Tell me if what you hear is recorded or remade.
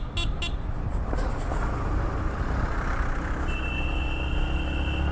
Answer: recorded